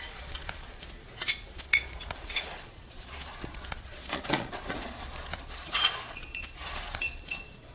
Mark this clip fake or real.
fake